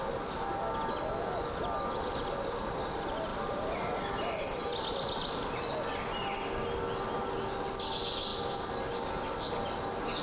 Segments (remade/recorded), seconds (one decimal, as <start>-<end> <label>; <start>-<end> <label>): 0.0-3.3 recorded; 3.3-5.4 remade; 5.4-10.2 recorded